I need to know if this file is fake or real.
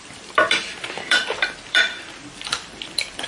fake